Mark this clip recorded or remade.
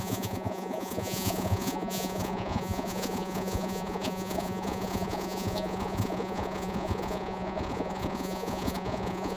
remade